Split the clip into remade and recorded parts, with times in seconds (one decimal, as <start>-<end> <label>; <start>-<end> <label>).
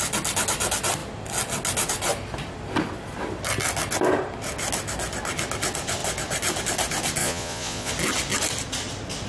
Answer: 0.0-7.2 recorded; 7.2-7.9 remade; 7.9-9.3 recorded